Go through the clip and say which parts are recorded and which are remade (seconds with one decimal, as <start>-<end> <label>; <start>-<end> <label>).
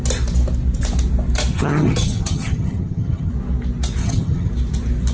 0.0-1.5 recorded; 1.5-3.3 remade; 3.3-4.0 recorded; 4.0-4.5 remade; 4.5-5.1 recorded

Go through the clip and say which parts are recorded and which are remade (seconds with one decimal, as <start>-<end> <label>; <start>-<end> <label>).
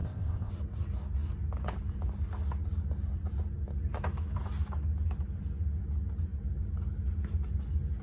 0.0-0.5 remade; 0.5-8.0 recorded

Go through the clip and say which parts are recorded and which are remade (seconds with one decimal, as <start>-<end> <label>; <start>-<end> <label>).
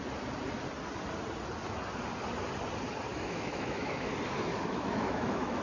0.0-3.1 recorded; 3.1-4.1 remade; 4.1-4.5 recorded; 4.5-5.6 remade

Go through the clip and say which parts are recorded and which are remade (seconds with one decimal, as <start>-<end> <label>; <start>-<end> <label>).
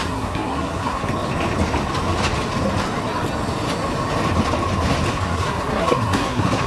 0.0-1.1 remade; 1.1-5.1 recorded; 5.1-6.7 remade